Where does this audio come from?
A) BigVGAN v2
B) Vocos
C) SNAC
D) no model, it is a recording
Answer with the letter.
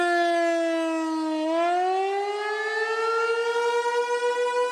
D